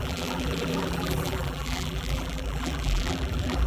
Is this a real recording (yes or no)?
no